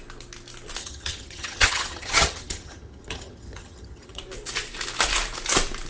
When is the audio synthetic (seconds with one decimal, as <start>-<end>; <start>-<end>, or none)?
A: 0.8-4.2